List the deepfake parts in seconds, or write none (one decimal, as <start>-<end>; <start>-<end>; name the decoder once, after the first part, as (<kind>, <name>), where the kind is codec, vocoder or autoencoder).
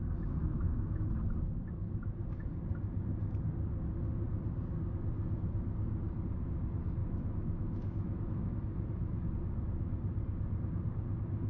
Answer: 0.4-1.1 (autoencoder, DAC-VAE); 7.0-9.3